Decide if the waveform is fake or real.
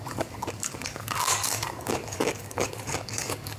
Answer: fake